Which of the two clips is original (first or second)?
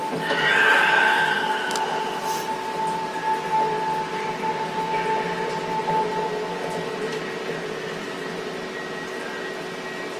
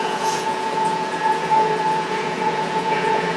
first